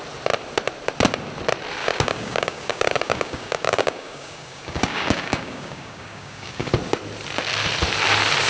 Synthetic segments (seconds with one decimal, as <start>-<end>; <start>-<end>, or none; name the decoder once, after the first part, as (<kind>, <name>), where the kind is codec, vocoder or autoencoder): 1.8-6.7 (codec, DAC)